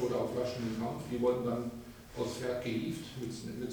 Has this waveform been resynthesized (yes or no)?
no